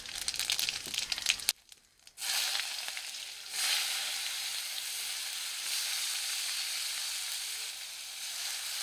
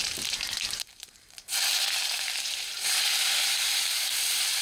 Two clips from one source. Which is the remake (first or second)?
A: second